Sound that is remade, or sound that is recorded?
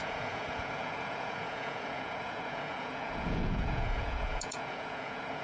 remade